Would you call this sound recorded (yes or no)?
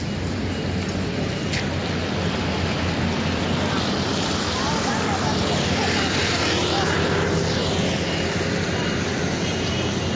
yes